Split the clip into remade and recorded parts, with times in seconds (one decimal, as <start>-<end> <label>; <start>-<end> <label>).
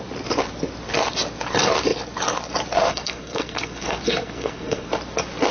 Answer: 0.0-2.9 recorded; 2.9-4.9 remade; 4.9-5.5 recorded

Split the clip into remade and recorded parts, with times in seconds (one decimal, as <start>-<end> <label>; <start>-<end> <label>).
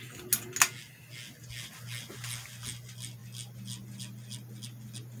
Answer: 0.0-5.2 recorded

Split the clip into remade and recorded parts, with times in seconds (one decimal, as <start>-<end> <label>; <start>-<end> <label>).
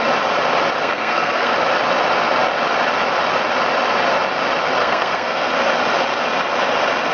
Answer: 0.0-0.8 recorded; 0.8-1.5 remade; 1.5-4.8 recorded; 4.8-5.5 remade; 5.5-7.1 recorded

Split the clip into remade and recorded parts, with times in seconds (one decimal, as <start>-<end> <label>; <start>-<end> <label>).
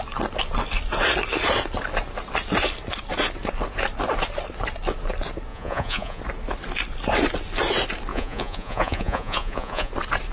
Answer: 0.0-5.5 recorded; 5.5-6.2 remade; 6.2-8.1 recorded; 8.1-9.9 remade; 9.9-10.3 recorded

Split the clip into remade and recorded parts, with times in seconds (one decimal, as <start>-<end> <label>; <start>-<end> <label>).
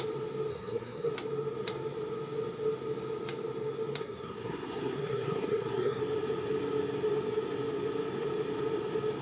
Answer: 0.0-0.5 recorded; 0.5-1.1 remade; 1.1-4.0 recorded; 4.0-6.0 remade; 6.0-9.2 recorded